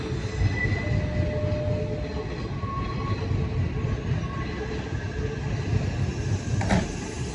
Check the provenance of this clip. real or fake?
real